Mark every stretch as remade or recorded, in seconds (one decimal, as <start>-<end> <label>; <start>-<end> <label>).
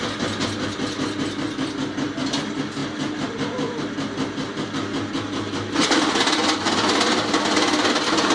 0.0-8.3 recorded